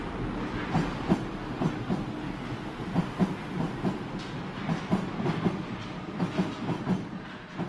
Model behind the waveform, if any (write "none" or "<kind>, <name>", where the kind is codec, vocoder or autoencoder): none